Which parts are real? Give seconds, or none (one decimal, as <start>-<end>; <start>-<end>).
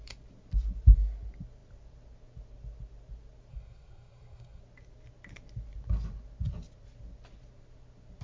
0.0-3.5; 4.6-8.2